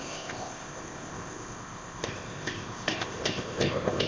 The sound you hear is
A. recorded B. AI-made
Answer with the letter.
B